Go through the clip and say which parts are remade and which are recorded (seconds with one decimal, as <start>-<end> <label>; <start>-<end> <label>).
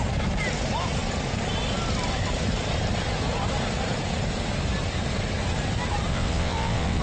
0.0-6.1 recorded; 6.1-7.0 remade